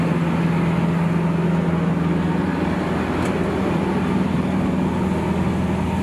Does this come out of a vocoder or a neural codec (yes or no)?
no